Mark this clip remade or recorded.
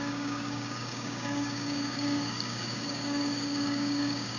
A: remade